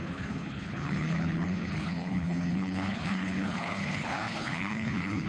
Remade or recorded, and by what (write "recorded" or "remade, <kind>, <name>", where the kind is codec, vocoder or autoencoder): remade, codec, HILCodec